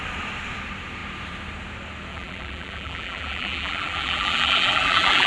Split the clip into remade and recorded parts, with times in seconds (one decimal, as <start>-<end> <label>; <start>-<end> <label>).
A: 0.0-2.1 recorded; 2.1-5.3 remade